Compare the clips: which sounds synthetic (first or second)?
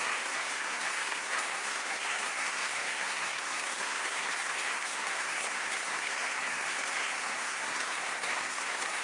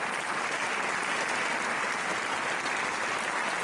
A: first